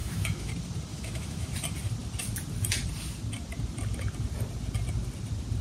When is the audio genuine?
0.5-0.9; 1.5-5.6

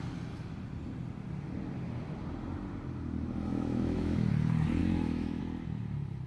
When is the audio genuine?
0.0-3.5; 4.3-4.8; 5.4-6.3

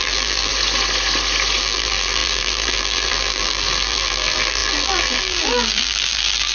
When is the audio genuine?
0.5-1.6

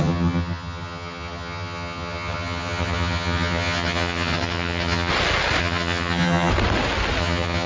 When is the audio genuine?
5.1-5.6; 6.5-7.2

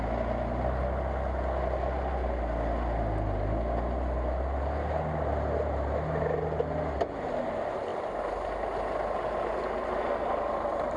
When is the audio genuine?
0.0-11.0

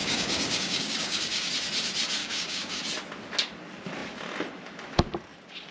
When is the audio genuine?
1.5-2.2; 2.8-5.7

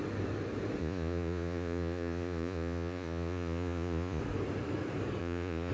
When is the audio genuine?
0.0-0.8; 4.2-5.2